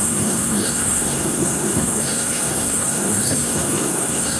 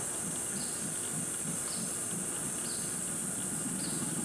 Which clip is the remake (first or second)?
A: first